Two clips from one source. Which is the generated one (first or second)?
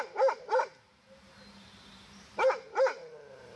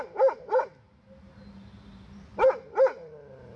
first